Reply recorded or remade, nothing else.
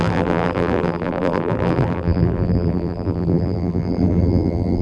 remade